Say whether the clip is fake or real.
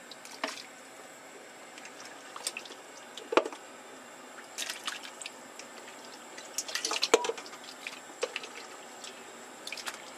real